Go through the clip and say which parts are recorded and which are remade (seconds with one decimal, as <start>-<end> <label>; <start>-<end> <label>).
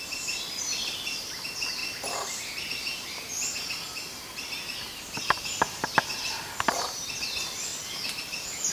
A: 0.0-1.8 remade; 1.8-6.7 recorded; 6.7-8.7 remade